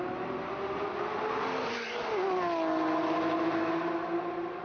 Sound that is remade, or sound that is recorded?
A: recorded